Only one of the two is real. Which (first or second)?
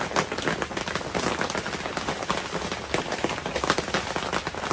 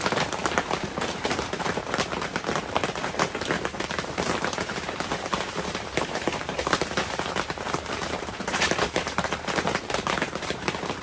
first